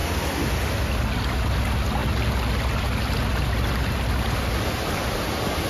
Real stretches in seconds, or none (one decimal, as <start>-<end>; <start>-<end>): 0.0-5.7